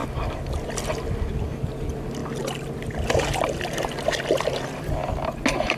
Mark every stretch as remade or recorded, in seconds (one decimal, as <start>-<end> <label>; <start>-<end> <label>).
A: 0.0-5.8 recorded